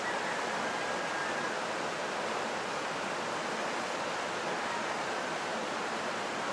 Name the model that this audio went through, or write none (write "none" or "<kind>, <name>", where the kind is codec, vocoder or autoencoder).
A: none